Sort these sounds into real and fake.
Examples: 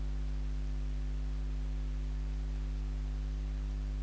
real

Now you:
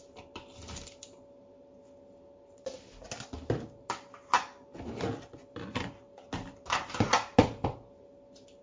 real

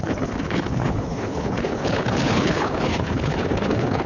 fake